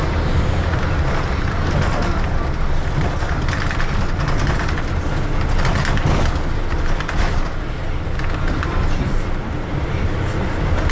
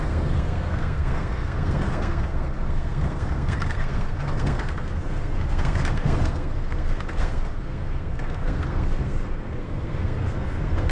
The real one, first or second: first